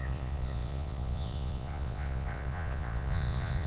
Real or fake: fake